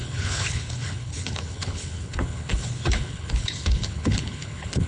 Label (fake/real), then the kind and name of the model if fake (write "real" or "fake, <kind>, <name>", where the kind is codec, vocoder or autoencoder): fake, codec, HILCodec